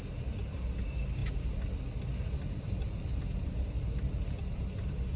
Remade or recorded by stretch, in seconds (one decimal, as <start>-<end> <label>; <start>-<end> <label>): 0.0-5.2 recorded